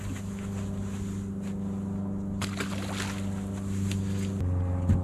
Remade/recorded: recorded